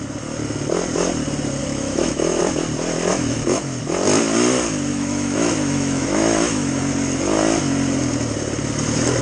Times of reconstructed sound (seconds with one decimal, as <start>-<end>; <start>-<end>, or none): 1.6-2.4; 3.1-3.8; 4.9-6.8